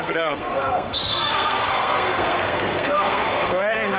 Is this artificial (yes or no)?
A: yes